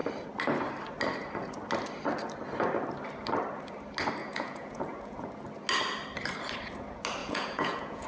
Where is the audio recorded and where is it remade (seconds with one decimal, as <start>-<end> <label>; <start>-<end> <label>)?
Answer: 0.0-4.2 recorded; 4.2-5.3 remade; 5.3-7.2 recorded; 7.2-8.1 remade